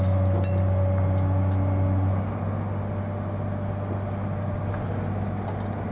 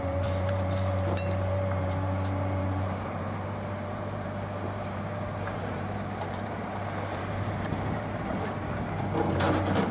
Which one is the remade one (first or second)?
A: second